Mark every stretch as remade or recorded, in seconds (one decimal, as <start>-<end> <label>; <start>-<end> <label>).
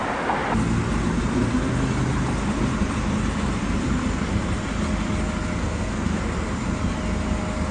0.0-5.6 recorded; 5.6-6.2 remade; 6.2-7.7 recorded